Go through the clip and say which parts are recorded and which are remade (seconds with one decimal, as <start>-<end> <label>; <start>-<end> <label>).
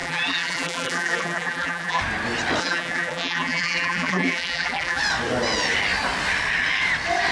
0.0-2.0 remade; 2.0-2.6 recorded; 2.6-5.0 remade; 5.0-7.3 recorded